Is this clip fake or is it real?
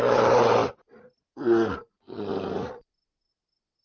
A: real